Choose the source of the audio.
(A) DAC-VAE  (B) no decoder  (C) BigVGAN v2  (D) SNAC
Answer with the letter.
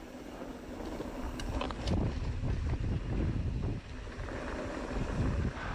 B